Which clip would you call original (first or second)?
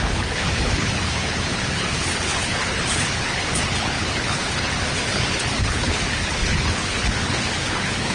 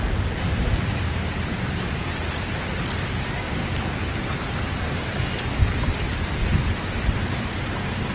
second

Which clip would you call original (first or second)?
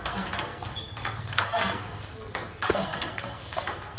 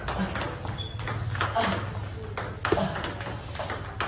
second